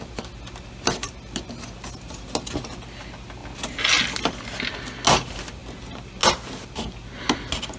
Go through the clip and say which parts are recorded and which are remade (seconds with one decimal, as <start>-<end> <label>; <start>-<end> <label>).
0.0-7.8 recorded